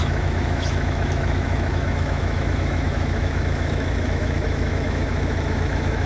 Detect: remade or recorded remade